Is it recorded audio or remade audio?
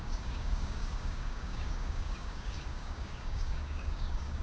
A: remade